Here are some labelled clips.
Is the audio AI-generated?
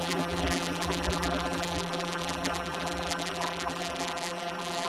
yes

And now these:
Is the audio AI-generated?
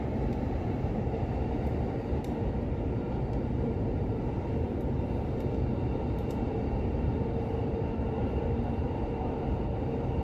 yes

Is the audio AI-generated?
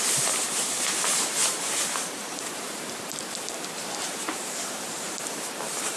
yes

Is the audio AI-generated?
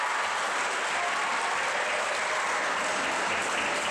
no